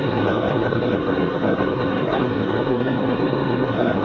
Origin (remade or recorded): remade